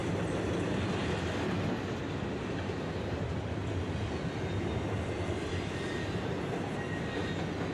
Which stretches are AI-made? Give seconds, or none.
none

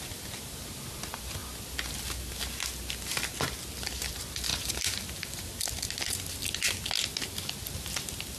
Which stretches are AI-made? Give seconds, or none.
none

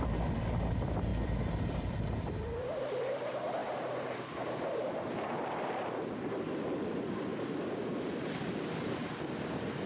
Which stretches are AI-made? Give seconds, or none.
0.0-3.6 (vocoder, BigVGAN v2); 4.6-7.3; 8.7-9.9